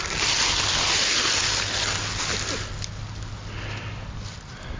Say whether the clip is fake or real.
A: real